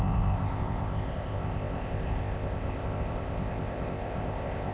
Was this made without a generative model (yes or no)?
no